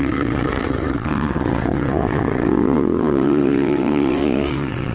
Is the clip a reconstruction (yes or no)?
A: yes